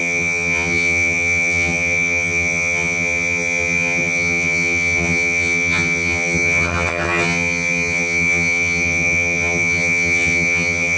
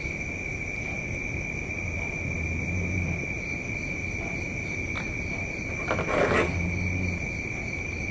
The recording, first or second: second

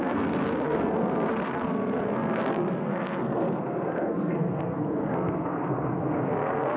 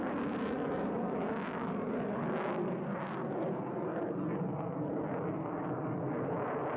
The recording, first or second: second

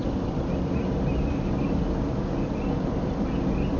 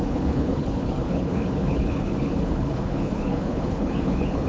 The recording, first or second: first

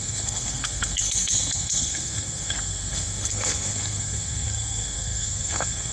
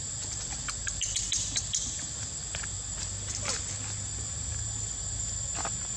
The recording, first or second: second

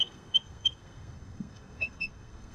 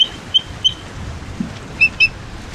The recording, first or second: second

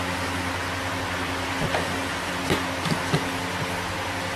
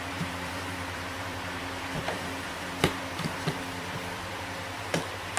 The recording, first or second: first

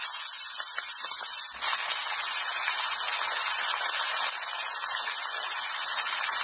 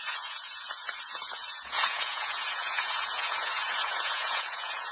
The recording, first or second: first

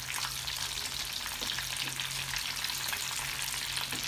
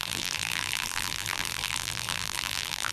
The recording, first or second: first